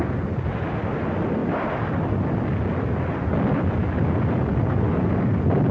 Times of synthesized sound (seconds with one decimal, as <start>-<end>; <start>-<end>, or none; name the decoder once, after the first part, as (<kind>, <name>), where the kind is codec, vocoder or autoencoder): none